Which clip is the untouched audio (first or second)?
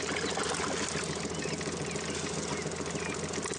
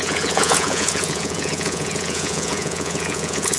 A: first